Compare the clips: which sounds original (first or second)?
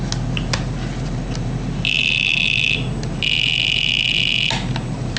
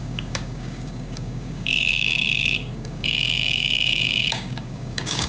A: first